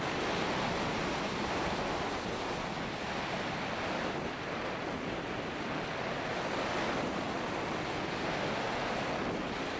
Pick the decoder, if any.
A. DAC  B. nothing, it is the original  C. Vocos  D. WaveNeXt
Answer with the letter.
B